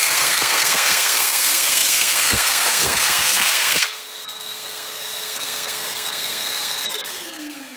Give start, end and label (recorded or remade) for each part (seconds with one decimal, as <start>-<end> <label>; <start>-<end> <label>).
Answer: 0.0-7.8 remade

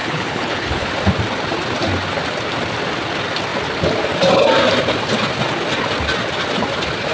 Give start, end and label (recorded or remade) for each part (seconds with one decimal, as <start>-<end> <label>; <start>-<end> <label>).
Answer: 0.0-0.9 remade; 0.9-7.1 recorded

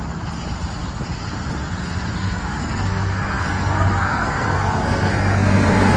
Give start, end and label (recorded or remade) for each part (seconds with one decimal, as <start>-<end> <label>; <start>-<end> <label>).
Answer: 0.0-2.2 recorded; 2.2-6.0 remade